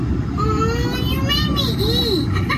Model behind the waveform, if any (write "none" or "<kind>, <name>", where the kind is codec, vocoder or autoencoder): none